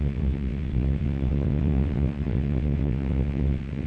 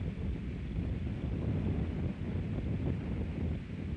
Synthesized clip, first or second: first